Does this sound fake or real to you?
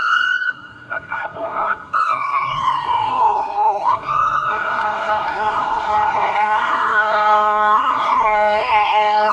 fake